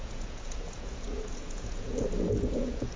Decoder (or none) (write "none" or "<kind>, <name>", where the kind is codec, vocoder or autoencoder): vocoder, Vocos